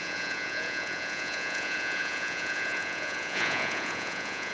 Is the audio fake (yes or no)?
yes